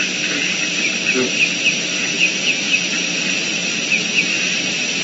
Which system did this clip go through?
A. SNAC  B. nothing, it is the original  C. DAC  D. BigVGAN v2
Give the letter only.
D